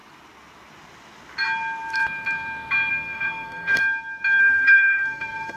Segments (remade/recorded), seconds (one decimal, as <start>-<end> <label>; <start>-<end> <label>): 0.0-2.9 recorded; 2.9-3.8 remade; 3.8-4.4 recorded; 4.4-5.6 remade